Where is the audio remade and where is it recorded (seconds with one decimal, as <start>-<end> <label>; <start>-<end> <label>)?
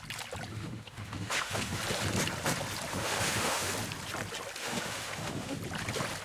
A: 0.0-0.5 recorded; 0.5-1.8 remade; 1.8-2.9 recorded; 2.9-3.7 remade; 3.7-4.6 recorded; 4.6-5.6 remade; 5.6-6.2 recorded